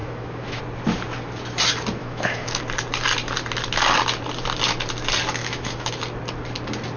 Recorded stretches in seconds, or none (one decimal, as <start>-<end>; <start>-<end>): 0.6-2.0; 2.6-5.4; 5.9-7.0